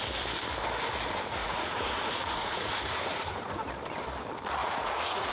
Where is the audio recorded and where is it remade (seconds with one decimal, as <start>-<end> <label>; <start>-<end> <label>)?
0.0-1.4 recorded; 1.4-3.7 remade; 3.7-4.6 recorded; 4.6-5.3 remade